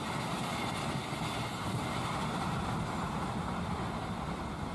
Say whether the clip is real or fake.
real